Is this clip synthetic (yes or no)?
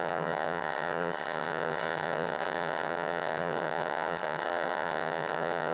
yes